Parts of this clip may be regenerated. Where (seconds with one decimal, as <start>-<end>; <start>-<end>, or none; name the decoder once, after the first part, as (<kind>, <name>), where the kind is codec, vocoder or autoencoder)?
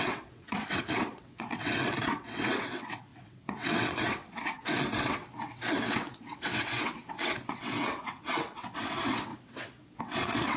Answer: 0.0-10.6 (vocoder, WaveNeXt)